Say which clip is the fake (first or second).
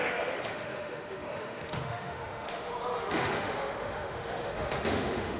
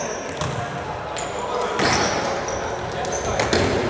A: first